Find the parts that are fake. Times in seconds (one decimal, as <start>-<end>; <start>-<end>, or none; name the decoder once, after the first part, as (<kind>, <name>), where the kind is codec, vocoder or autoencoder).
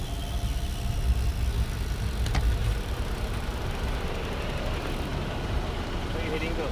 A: 2.6-4.4 (vocoder, BigVGAN v2); 5.1-5.7